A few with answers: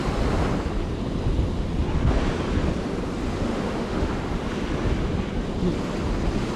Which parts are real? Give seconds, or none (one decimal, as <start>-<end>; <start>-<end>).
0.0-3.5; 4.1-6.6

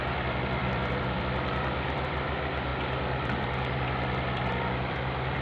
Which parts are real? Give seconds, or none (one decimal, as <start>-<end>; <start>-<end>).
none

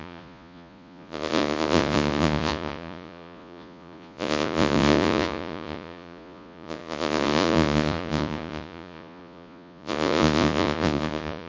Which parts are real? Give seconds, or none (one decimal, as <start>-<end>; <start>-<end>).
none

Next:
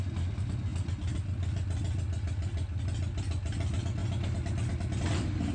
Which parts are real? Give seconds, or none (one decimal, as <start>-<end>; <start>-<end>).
0.0-5.5